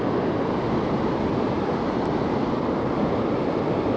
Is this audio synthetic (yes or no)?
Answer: no